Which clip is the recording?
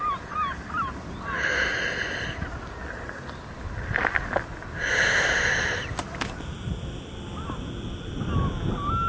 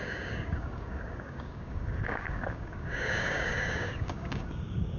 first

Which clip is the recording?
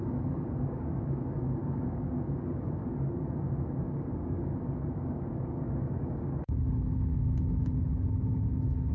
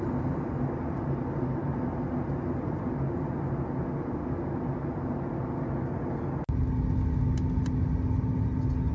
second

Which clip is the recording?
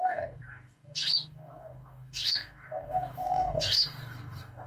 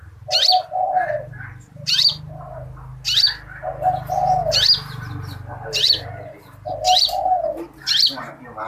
second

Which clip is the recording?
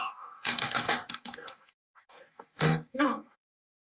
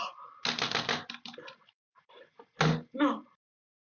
second